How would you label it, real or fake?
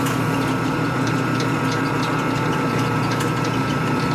fake